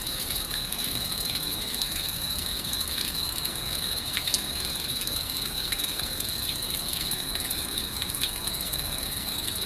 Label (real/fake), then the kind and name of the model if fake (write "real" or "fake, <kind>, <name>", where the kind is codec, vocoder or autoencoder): fake, codec, SNAC